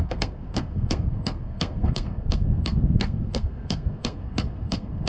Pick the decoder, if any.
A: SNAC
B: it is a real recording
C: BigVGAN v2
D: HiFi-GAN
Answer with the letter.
A